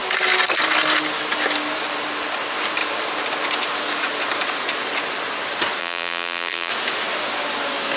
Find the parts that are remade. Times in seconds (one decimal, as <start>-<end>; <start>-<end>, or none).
5.8-6.7